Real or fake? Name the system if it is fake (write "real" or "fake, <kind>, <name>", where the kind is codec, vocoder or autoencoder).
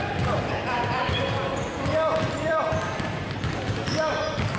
real